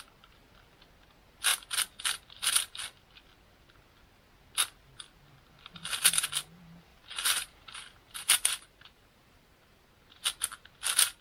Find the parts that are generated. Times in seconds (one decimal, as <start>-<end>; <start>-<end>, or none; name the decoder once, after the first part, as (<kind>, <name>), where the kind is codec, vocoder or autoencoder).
6.9-9.9 (vocoder, BigVGAN v2)